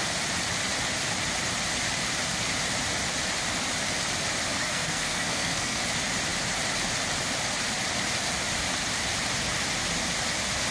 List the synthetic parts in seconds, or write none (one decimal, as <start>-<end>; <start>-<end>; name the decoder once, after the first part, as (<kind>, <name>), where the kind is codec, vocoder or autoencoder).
4.5-5.8 (codec, SNAC)